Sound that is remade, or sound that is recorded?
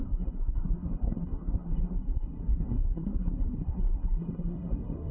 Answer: remade